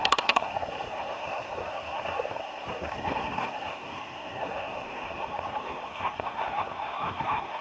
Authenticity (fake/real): fake